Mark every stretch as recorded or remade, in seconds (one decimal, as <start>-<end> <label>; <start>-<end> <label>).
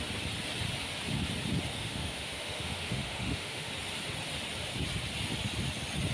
0.0-1.7 recorded; 1.7-3.7 remade; 3.7-6.1 recorded